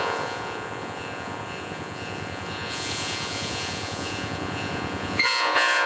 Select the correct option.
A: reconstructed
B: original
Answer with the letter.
A